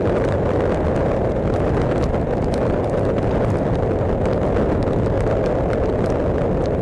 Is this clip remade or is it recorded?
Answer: recorded